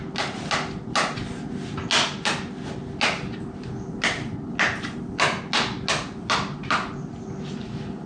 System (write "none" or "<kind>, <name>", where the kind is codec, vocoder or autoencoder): none